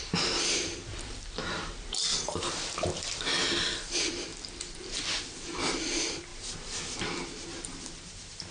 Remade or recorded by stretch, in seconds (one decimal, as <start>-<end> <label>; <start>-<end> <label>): 0.0-4.3 remade; 4.3-4.8 recorded; 4.8-6.3 remade; 6.3-7.0 recorded; 7.0-8.5 remade